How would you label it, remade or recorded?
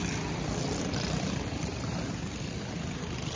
recorded